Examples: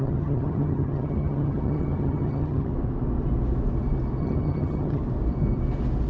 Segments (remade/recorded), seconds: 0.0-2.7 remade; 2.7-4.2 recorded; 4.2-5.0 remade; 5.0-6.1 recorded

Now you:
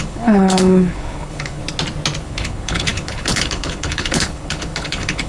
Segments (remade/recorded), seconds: 0.0-1.6 remade; 1.6-2.2 recorded; 2.2-5.3 remade

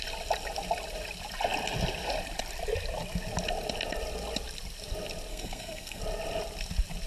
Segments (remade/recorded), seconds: 0.0-5.3 recorded; 5.3-6.0 remade; 6.0-7.1 recorded

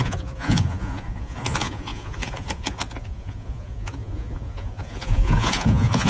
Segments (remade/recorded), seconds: 0.0-6.1 remade

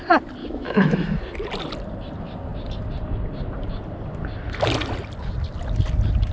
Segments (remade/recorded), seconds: 0.0-0.4 recorded; 0.4-1.2 remade; 1.2-6.3 recorded

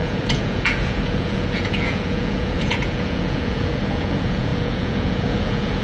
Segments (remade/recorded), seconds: 0.0-5.8 remade

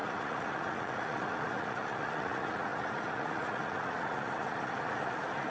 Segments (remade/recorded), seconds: 0.0-5.5 remade